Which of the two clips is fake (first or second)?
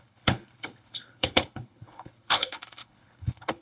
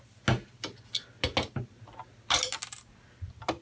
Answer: first